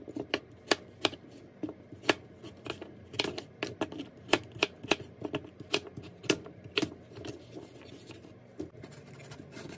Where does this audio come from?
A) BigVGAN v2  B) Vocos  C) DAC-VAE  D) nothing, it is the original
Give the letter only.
D